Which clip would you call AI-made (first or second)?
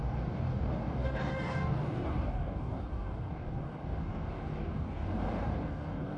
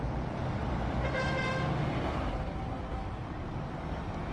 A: first